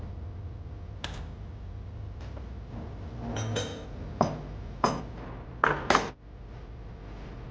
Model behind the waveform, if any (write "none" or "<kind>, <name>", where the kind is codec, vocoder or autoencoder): none